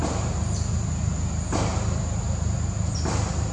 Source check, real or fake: real